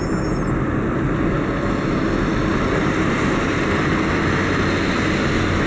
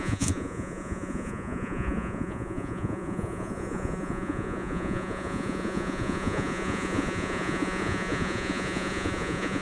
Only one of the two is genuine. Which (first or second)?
first